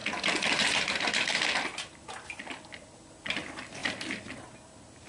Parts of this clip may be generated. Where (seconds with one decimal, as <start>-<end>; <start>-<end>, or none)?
0.0-3.1; 3.8-5.1